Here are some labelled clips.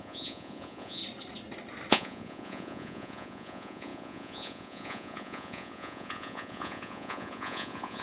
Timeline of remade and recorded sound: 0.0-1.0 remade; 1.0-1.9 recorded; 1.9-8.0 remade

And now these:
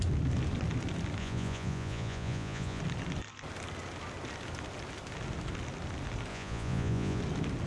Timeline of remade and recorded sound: 0.0-1.2 recorded; 1.2-2.8 remade; 2.8-6.3 recorded; 6.3-7.2 remade; 7.2-7.7 recorded

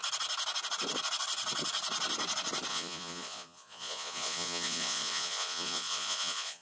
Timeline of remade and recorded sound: 0.0-2.7 recorded; 2.7-6.6 remade